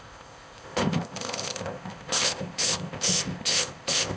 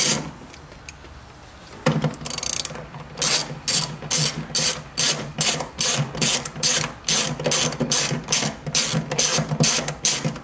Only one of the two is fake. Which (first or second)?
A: first